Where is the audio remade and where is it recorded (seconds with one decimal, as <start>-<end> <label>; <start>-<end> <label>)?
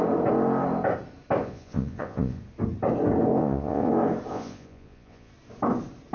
0.0-1.4 recorded; 1.4-2.4 remade; 2.4-3.4 recorded; 3.4-3.9 remade; 3.9-4.3 recorded; 4.3-5.3 remade; 5.3-6.1 recorded